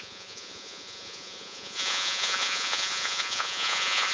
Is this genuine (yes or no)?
no